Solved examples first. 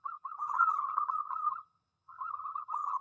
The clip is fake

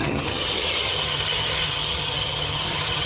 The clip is fake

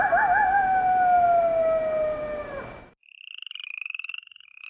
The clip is real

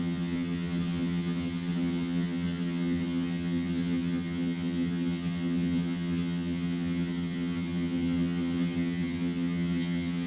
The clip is fake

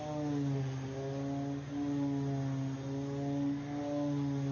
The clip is real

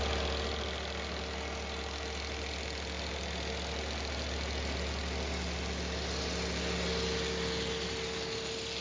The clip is real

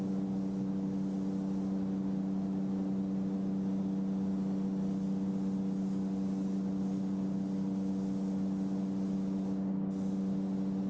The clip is real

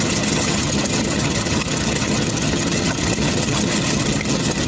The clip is fake